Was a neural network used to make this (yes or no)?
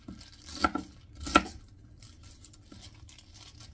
no